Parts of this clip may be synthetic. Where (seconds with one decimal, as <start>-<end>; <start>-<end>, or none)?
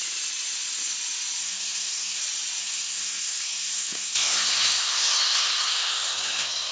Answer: 1.4-2.2; 2.6-6.7